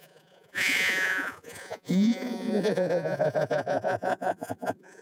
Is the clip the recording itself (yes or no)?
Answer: no